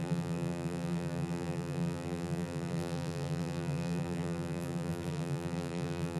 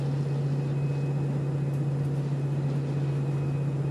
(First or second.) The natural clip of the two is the second